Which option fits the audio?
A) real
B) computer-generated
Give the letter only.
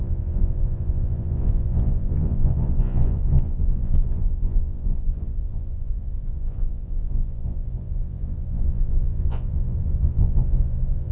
B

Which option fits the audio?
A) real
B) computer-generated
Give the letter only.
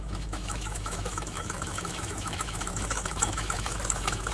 B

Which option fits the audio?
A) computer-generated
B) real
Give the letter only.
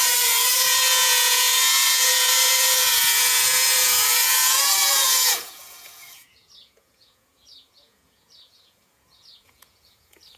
A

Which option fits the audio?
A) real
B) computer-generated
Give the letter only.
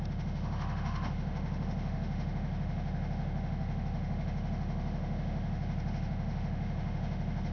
B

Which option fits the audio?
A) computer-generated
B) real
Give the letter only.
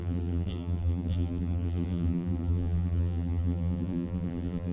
A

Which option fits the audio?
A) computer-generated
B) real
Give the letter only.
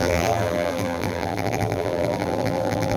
A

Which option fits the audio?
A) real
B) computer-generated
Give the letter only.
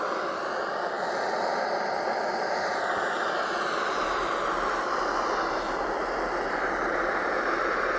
A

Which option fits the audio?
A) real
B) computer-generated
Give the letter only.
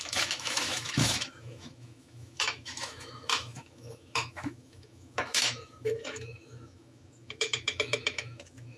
B